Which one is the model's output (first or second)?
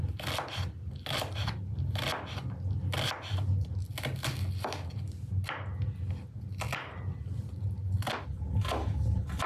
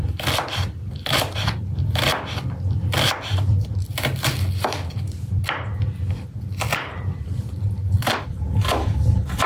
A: second